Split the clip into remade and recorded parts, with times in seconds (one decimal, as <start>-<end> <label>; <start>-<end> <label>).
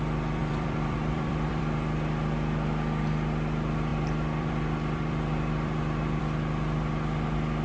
0.0-0.4 recorded; 0.4-1.6 remade; 1.6-3.9 recorded; 3.9-6.2 remade; 6.2-7.6 recorded